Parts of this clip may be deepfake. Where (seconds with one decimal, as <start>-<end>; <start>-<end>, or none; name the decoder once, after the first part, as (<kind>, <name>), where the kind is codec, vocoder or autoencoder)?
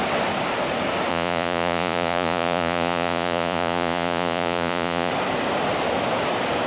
1.1-5.1 (vocoder, Vocos)